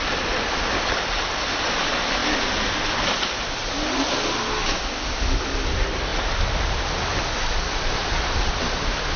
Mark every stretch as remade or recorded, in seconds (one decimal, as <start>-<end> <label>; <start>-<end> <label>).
0.0-6.1 recorded; 6.1-7.5 remade; 7.5-9.2 recorded